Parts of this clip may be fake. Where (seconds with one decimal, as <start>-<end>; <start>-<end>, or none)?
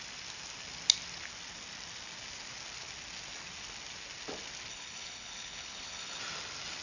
4.7-6.2